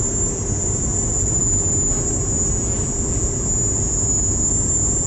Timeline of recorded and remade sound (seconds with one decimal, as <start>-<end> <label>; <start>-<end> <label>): 0.0-5.1 recorded